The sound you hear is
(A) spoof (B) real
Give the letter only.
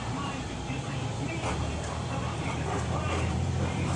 A